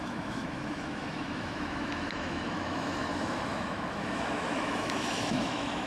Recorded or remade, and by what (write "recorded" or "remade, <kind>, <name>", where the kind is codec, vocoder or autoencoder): remade, autoencoder, DAC-VAE